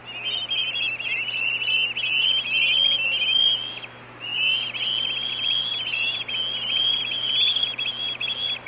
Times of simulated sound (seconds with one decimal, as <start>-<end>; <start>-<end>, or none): 5.7-6.3; 6.8-7.3